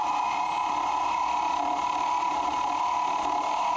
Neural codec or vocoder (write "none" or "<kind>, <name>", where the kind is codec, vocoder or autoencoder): none